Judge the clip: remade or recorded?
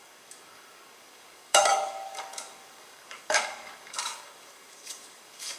remade